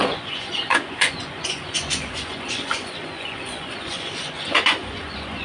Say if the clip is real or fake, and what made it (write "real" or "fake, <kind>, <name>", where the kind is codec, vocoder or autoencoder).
fake, vocoder, Vocos